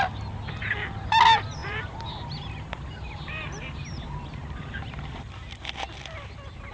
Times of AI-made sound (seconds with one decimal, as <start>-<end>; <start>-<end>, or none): 1.6-5.5